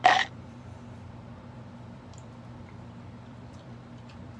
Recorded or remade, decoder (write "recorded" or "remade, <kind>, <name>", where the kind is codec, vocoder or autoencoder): remade, vocoder, BigVGAN v2